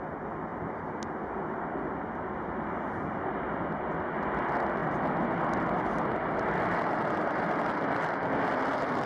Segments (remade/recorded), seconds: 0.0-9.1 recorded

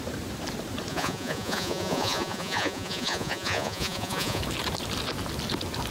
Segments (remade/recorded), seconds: 0.0-0.9 recorded; 0.9-4.4 remade; 4.4-5.9 recorded